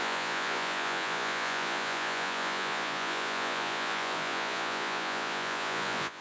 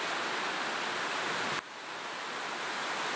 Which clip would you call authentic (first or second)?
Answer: second